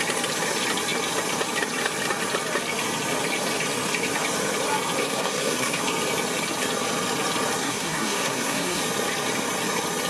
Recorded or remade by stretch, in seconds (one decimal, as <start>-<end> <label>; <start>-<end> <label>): 0.0-5.0 recorded; 5.0-5.8 remade; 5.8-7.6 recorded; 7.6-8.8 remade; 8.8-10.1 recorded